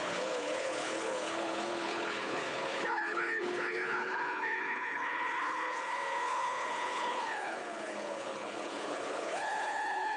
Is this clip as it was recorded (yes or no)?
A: no